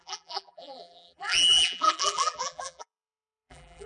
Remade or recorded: remade